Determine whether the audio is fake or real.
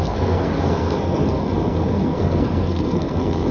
fake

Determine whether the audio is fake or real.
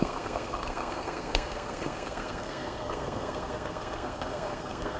fake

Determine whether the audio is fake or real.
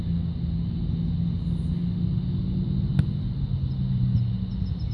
real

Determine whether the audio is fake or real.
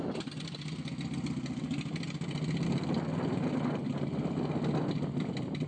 real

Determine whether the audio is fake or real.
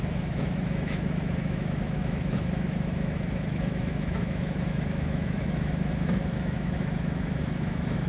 fake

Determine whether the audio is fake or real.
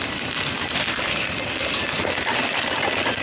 fake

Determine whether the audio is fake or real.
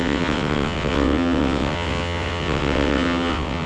fake